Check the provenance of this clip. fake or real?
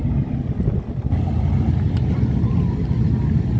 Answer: real